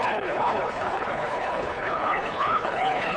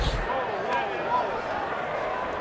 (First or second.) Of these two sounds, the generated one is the first